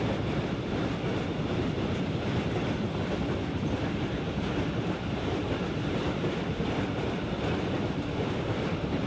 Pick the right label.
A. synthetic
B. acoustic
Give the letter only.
A